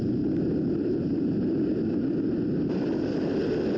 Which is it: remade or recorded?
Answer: recorded